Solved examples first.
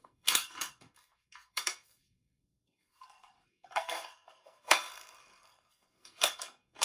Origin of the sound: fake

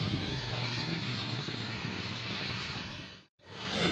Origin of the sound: fake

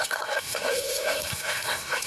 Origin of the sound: fake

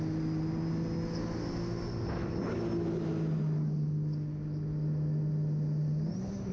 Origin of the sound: real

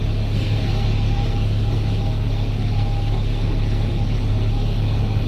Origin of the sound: fake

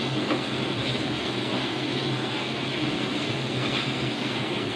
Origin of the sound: fake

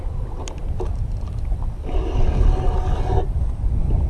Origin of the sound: real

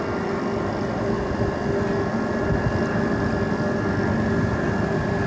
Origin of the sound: real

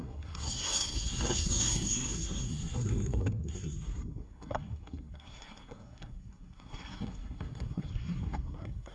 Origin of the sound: fake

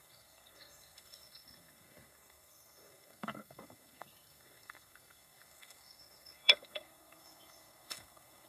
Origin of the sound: fake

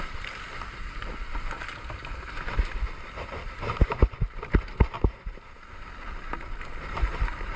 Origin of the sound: real